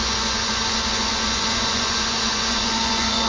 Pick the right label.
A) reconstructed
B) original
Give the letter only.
A